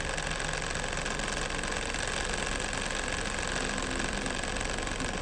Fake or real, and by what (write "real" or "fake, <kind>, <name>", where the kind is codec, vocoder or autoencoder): real